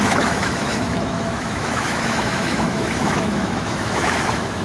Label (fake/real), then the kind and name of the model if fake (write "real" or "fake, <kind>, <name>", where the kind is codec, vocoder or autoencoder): fake, autoencoder, DAC-VAE